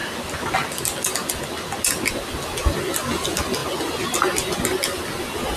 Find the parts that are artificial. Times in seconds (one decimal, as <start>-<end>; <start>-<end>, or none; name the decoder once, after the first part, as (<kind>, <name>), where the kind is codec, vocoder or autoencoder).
none